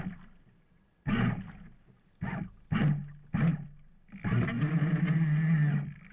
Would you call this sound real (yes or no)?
yes